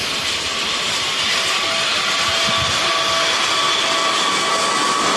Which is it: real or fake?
real